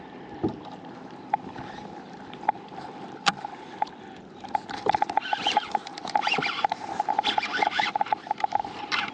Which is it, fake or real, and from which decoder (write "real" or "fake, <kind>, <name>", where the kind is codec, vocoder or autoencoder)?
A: fake, vocoder, BigVGAN v2